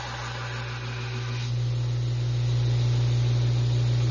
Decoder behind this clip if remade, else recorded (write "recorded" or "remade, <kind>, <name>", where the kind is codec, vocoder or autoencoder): recorded